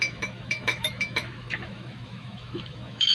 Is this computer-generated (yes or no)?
yes